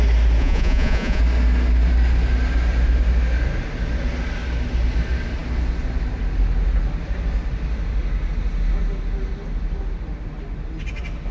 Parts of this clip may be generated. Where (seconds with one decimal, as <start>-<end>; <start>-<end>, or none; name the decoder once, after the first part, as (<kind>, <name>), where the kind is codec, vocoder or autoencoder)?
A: 0.4-1.2 (vocoder, Vocos)